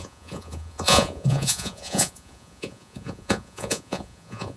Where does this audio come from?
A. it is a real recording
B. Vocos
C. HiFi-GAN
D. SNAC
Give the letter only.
B